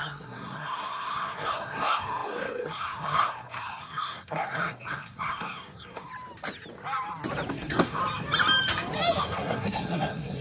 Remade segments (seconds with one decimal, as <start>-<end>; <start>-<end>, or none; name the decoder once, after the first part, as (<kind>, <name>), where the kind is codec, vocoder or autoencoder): 0.0-6.1 (codec, SNAC); 7.5-8.0; 9.2-10.4